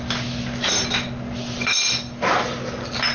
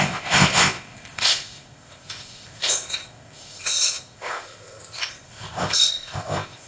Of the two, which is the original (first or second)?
first